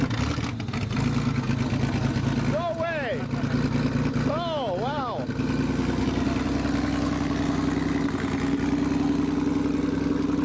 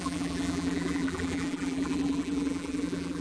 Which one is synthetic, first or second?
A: second